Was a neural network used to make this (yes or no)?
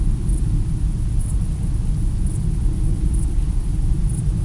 no